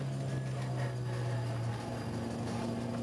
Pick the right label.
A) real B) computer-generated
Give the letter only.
A